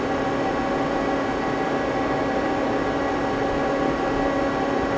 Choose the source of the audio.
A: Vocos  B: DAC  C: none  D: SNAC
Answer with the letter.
C